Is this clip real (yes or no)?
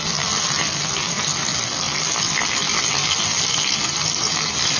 yes